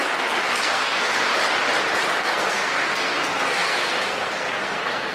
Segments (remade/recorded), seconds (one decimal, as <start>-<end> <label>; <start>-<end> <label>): 0.0-1.3 remade; 1.3-2.2 recorded; 2.2-5.1 remade